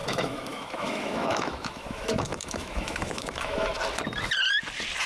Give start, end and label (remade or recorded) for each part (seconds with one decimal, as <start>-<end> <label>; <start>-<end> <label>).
0.0-3.7 remade; 3.7-5.1 recorded